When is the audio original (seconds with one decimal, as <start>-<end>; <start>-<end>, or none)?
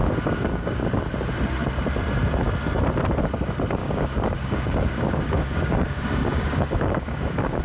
1.0-3.8